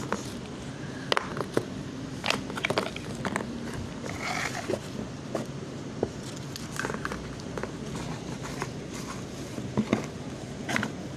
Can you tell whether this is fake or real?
real